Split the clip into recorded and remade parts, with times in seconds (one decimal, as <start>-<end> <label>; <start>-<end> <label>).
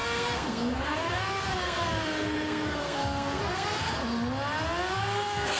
0.0-4.0 remade; 4.0-4.9 recorded; 4.9-5.6 remade